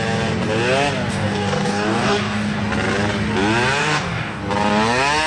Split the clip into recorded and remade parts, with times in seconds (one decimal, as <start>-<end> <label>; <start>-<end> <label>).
0.0-1.1 recorded; 1.1-2.6 remade; 2.6-3.8 recorded; 3.8-4.4 remade; 4.4-5.3 recorded